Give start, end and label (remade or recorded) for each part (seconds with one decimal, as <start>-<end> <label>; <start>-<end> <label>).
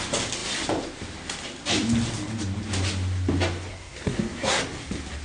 0.0-3.7 recorded; 3.7-4.6 remade; 4.6-5.2 recorded